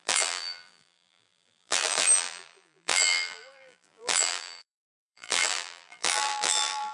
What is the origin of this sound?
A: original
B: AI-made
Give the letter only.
B